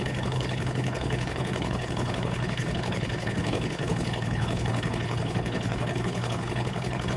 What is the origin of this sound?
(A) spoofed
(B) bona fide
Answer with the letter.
A